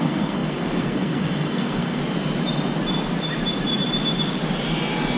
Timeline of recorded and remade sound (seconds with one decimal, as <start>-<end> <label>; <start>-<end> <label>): 0.0-2.0 remade; 2.0-5.2 recorded